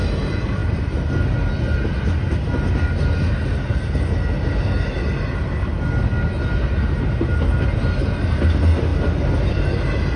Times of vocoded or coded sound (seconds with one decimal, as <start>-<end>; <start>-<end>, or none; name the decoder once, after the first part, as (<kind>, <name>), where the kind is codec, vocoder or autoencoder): none